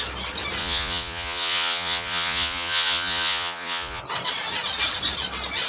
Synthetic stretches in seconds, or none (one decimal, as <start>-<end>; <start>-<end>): 0.6-4.0